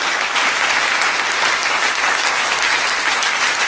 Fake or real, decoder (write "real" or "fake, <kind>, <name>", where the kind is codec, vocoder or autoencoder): real